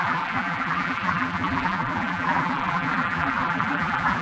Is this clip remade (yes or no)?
yes